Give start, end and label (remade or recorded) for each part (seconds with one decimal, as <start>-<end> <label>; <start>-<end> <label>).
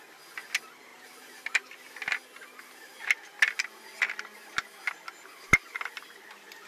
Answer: 0.0-6.7 recorded